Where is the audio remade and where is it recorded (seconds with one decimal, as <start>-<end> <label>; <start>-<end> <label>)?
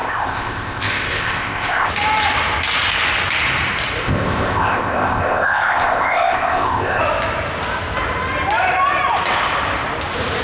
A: 0.0-1.9 remade; 1.9-4.0 recorded; 4.0-7.0 remade; 7.0-10.4 recorded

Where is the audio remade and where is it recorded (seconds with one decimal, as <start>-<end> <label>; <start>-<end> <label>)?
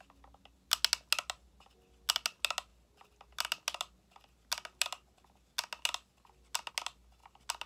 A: 0.0-7.7 recorded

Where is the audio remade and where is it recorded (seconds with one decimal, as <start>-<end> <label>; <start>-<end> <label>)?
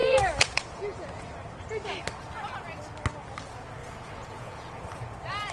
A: 0.0-1.3 remade; 1.3-3.8 recorded; 3.8-4.8 remade; 4.8-5.5 recorded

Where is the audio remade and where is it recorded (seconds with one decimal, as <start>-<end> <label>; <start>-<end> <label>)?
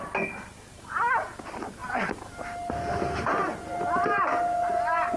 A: 0.0-5.2 recorded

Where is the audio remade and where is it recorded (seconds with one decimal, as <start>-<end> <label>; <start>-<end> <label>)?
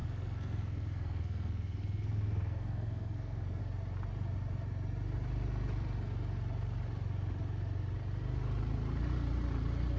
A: 0.0-3.6 remade; 3.6-10.0 recorded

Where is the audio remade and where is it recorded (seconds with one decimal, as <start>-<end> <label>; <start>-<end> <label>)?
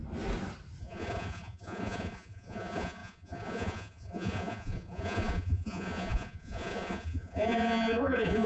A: 0.0-0.8 recorded; 0.8-8.5 remade